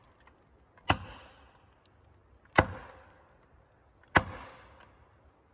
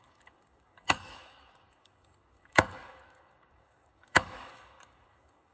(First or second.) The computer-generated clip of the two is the second